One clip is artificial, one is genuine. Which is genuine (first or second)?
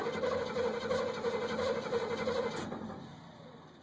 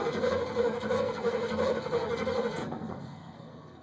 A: first